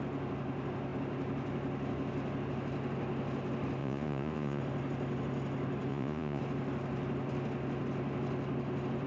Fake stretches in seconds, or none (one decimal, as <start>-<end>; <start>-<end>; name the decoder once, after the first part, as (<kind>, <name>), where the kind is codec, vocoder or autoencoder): 3.8-4.6 (vocoder, Vocos); 5.9-6.4

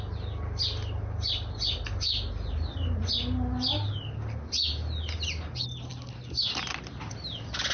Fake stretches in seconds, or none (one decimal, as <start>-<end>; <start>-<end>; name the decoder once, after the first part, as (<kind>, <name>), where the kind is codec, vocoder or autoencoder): none

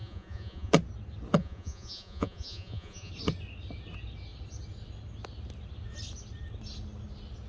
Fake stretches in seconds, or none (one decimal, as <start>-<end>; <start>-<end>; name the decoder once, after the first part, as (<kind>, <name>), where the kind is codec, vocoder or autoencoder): 0.0-0.7 (vocoder, Vocos); 1.4-3.1

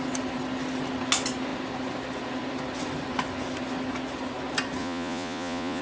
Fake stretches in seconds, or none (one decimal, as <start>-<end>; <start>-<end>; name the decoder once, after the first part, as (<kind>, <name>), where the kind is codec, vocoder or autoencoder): 4.8-5.8 (vocoder, Vocos)

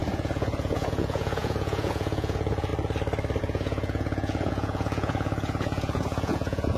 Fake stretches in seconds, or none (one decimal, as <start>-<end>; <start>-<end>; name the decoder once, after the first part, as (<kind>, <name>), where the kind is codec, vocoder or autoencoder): 0.0-2.7 (vocoder, Vocos); 3.4-6.8

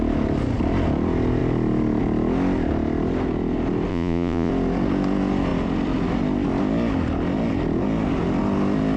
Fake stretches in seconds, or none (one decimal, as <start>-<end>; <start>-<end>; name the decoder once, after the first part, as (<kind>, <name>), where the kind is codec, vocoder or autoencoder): 3.9-4.5 (vocoder, Vocos)

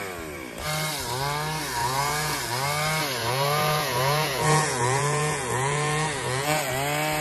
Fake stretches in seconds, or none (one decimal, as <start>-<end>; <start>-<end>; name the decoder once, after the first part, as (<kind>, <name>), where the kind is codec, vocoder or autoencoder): 1.8-2.4 (vocoder, Vocos); 3.2-6.7